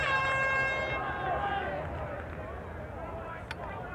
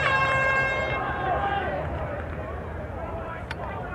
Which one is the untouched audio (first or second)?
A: first